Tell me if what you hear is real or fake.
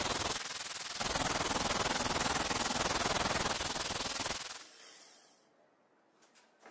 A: real